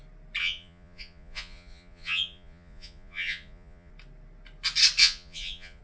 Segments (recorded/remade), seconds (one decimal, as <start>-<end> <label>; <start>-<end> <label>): 0.0-0.4 recorded; 0.4-3.9 remade; 3.9-5.0 recorded; 5.0-5.8 remade